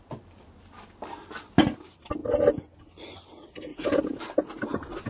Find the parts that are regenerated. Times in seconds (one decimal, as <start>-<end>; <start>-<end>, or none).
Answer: 3.7-5.1